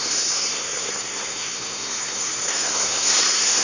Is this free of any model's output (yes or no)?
no